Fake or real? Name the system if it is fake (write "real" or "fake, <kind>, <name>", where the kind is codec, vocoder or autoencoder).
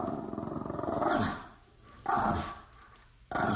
real